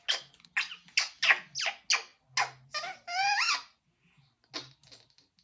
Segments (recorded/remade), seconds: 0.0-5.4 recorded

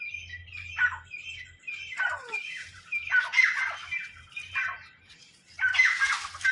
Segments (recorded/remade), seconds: 0.0-0.4 recorded; 0.4-3.1 remade; 3.1-4.0 recorded; 4.0-6.0 remade; 6.0-6.5 recorded

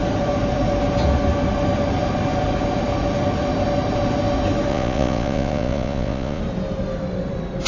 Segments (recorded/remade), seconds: 0.0-4.7 recorded; 4.7-6.4 remade; 6.4-7.7 recorded

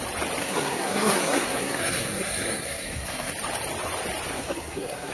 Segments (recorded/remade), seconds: 0.0-0.4 recorded; 0.4-3.3 remade; 3.3-4.3 recorded; 4.3-5.1 remade

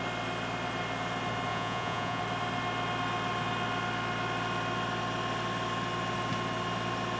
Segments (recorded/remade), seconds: 0.0-1.5 recorded; 1.5-2.2 remade; 2.2-7.2 recorded

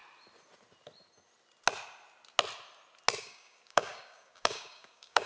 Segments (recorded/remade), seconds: 0.0-3.2 recorded; 3.2-5.3 remade